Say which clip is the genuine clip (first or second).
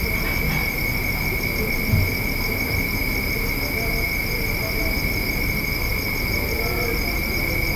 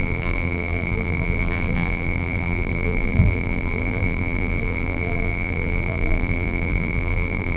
first